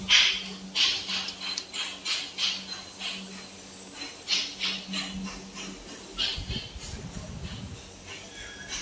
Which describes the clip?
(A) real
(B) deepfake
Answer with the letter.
A